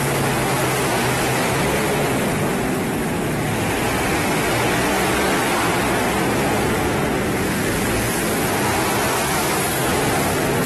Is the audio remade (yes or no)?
no